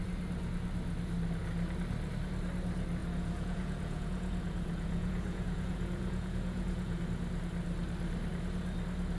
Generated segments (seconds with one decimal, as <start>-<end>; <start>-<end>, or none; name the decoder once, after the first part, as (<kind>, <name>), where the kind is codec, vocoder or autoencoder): 3.0-7.0 (vocoder, Vocos)